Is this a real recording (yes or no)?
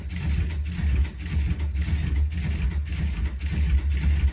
yes